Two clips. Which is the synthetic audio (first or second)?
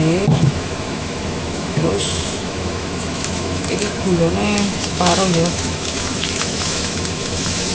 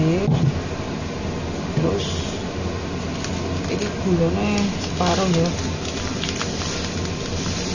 first